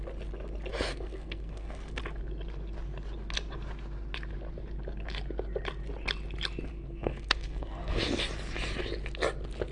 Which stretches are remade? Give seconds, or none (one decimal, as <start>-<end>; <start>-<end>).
0.9-2.0; 6.7-8.0